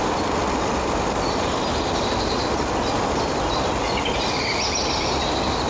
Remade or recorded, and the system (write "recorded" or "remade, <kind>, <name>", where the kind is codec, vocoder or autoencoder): recorded